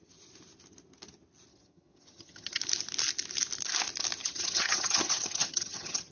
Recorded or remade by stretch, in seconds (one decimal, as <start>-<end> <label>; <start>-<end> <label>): 0.0-1.5 recorded; 1.5-2.6 remade; 2.6-4.2 recorded; 4.2-6.1 remade